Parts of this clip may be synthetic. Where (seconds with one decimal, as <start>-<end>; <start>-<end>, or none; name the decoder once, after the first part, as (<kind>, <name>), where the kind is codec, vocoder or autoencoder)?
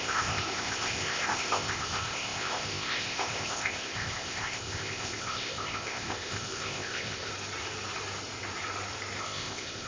0.0-7.3 (codec, ZipCodec); 9.2-9.9